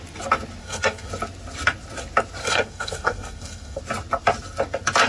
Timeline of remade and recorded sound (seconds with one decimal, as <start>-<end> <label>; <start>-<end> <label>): 0.0-0.6 recorded; 0.6-1.1 remade; 1.1-2.4 recorded; 2.4-3.8 remade; 3.8-5.1 recorded